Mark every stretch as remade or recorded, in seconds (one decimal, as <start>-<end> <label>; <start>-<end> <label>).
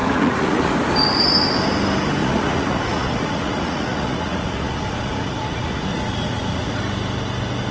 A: 0.0-0.7 remade; 0.7-2.2 recorded; 2.2-6.8 remade; 6.8-7.7 recorded